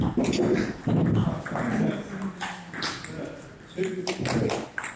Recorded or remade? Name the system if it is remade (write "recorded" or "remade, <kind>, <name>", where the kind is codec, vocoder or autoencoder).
recorded